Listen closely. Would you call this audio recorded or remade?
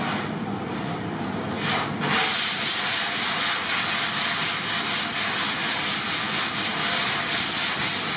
recorded